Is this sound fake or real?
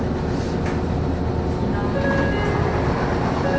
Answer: real